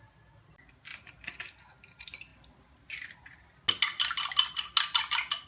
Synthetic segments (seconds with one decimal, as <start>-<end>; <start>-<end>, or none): none